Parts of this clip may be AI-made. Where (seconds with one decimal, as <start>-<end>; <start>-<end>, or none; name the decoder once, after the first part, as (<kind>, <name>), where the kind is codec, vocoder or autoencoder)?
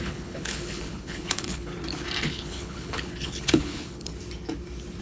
0.0-1.7 (codec, HILCodec); 2.2-4.1